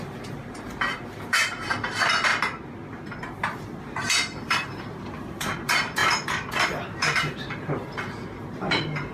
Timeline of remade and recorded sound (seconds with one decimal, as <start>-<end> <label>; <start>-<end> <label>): 0.0-2.3 remade; 2.3-3.8 recorded; 3.8-6.0 remade; 6.0-6.5 recorded; 6.5-9.1 remade